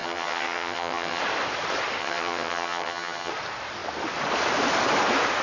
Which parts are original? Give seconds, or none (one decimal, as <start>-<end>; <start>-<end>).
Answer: 1.2-2.0; 3.3-5.4